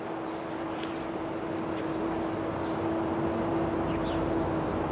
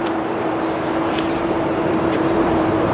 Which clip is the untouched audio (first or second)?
first